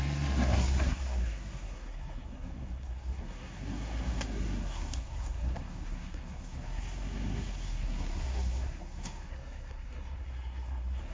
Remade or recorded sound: remade